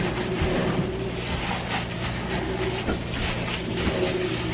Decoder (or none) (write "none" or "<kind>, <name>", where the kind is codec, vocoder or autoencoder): none